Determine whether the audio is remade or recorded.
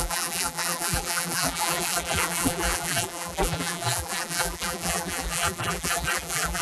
remade